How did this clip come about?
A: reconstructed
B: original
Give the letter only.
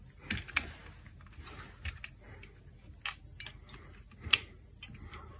B